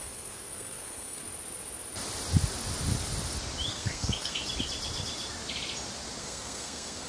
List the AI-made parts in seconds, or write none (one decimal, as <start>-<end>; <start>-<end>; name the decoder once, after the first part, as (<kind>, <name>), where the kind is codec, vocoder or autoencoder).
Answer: 0.0-1.2 (codec, SNAC); 3.7-4.4; 6.2-7.1